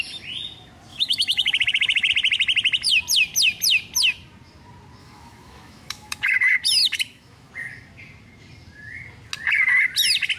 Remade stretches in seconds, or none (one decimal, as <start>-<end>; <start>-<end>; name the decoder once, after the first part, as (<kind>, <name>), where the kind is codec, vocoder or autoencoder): 0.9-2.1 (autoencoder, DAC-VAE); 5.0-6.3; 6.8-7.5